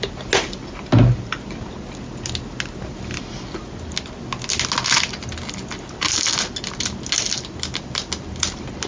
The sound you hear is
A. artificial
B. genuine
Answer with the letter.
B